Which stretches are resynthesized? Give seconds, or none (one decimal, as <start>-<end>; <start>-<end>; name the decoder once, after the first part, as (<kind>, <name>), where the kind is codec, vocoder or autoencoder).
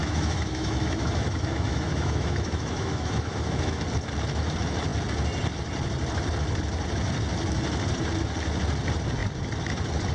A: 0.0-3.8 (autoencoder, DAC-VAE)